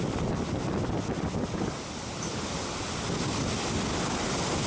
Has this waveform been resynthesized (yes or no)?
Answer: no